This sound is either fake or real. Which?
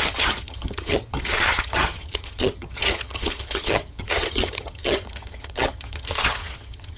fake